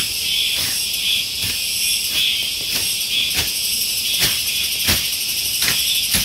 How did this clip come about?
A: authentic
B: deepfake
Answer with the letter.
A